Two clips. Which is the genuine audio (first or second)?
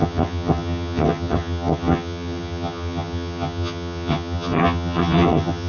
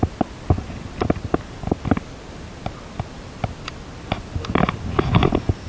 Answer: second